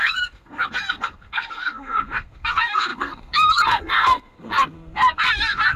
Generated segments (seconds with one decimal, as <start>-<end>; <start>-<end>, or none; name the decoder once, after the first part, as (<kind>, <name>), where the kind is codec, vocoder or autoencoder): 0.0-5.8 (codec, SNAC)